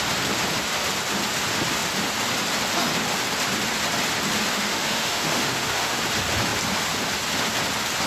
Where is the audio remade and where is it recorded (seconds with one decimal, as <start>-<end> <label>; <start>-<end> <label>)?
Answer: 0.0-4.5 recorded; 4.5-6.0 remade; 6.0-8.1 recorded